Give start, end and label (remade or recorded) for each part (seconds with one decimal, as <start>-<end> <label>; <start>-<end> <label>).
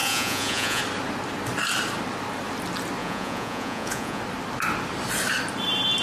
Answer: 0.0-0.8 remade; 0.8-3.0 recorded; 3.0-4.2 remade; 4.2-6.0 recorded